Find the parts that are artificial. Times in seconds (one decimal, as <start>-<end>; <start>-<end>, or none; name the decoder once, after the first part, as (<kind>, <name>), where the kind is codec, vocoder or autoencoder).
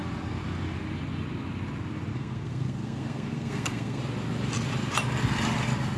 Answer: 2.1-4.0 (codec, SNAC)